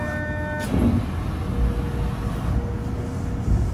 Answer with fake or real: real